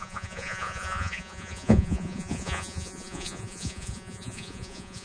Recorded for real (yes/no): no